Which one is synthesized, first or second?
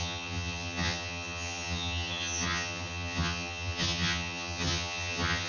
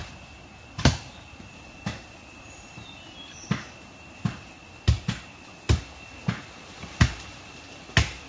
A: first